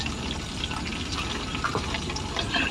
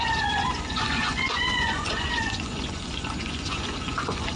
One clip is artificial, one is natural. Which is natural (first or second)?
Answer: first